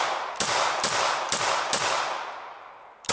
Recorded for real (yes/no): yes